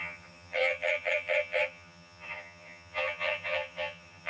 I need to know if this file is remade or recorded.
remade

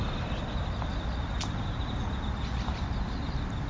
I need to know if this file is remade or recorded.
recorded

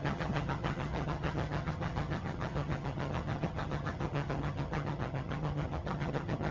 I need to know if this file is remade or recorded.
remade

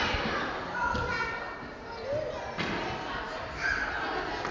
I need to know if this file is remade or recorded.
recorded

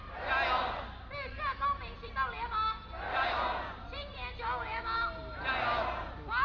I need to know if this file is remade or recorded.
recorded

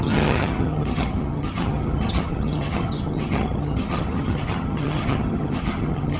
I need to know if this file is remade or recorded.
remade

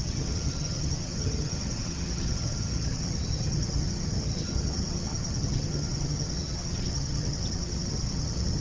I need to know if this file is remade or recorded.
remade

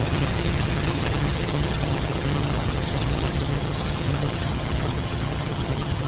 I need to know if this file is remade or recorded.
remade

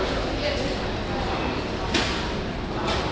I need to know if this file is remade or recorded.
recorded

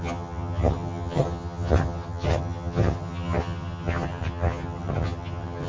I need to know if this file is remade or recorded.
remade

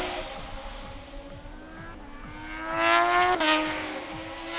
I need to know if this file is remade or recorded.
recorded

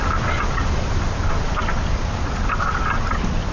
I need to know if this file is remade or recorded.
recorded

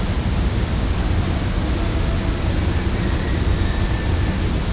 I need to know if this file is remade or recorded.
recorded